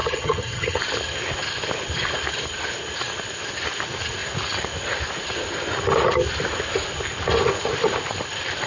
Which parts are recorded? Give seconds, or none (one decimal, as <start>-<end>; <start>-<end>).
0.8-8.7